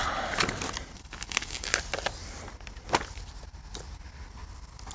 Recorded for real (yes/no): yes